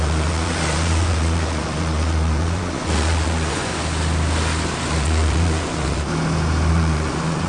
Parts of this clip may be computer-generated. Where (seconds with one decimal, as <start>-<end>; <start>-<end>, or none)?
0.0-3.7; 4.9-6.1; 6.7-7.5